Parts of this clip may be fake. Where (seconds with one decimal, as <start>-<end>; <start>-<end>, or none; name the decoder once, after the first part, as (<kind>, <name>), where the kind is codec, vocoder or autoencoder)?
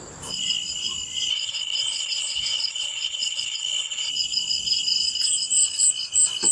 1.3-4.1 (codec, HILCodec)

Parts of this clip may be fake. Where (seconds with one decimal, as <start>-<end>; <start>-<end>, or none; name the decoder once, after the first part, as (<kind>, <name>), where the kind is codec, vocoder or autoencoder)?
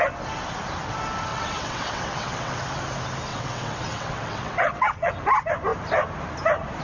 1.3-2.6 (vocoder, WaveNeXt); 3.3-5.1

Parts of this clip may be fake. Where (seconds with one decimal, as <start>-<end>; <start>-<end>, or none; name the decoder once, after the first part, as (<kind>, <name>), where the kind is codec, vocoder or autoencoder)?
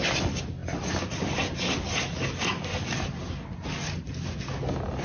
none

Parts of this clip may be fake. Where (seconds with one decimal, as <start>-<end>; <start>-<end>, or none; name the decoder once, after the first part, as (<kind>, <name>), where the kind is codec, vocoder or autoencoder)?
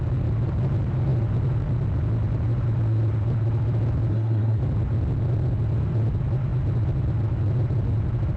4.1-4.6 (codec, SNAC)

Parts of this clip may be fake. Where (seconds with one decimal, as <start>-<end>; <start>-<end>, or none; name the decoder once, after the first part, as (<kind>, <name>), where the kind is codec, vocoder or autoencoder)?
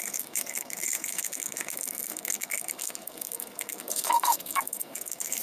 0.0-5.4 (codec, SNAC)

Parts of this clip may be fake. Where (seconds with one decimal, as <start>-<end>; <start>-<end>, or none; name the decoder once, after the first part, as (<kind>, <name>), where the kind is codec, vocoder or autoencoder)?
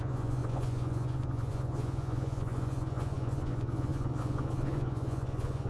0.0-5.7 (vocoder, Vocos)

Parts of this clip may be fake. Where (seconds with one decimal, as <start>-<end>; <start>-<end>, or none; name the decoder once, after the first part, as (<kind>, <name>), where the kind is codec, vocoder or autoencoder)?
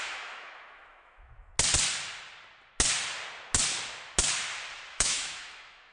0.0-1.5 (autoencoder, DAC-VAE); 4.9-5.9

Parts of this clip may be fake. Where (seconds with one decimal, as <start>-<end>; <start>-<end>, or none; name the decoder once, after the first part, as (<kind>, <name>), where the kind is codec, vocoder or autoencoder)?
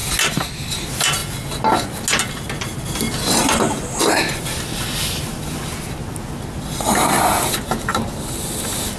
none